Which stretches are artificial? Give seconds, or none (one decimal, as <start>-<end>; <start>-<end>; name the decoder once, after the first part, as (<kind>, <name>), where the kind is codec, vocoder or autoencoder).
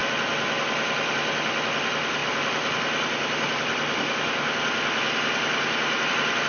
none